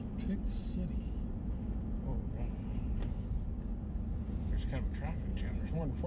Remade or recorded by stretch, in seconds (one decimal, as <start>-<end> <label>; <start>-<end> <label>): 0.0-5.3 recorded; 5.3-6.1 remade